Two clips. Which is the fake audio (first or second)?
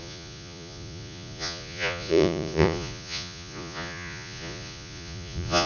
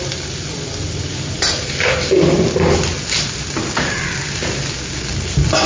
first